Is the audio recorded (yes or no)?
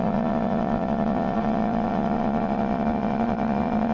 no